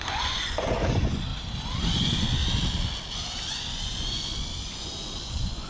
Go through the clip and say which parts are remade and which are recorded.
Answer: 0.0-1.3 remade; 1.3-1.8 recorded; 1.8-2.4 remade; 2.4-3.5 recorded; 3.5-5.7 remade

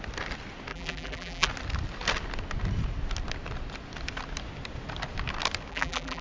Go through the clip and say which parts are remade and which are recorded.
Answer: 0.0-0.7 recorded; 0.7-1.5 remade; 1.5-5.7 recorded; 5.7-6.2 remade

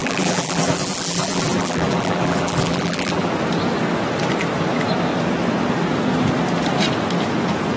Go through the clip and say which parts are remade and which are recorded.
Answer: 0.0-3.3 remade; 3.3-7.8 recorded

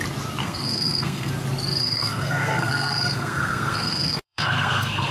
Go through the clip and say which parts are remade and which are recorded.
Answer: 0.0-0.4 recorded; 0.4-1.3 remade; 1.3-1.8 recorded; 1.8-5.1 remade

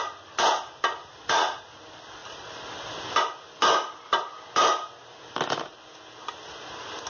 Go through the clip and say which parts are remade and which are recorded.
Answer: 0.0-1.0 recorded; 1.0-1.6 remade; 1.6-7.1 recorded

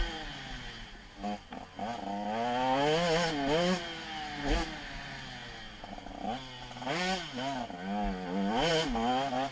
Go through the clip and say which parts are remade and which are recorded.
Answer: 0.0-9.5 recorded